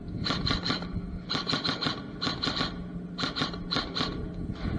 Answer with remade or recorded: recorded